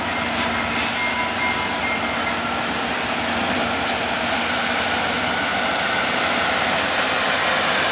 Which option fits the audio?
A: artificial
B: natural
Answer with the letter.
B